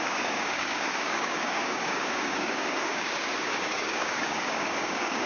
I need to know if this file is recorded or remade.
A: remade